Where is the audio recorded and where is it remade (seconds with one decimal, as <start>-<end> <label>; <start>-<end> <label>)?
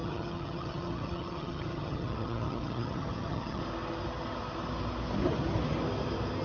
0.0-3.6 remade; 3.6-6.4 recorded